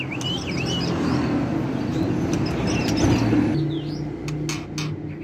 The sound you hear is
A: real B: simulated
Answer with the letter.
A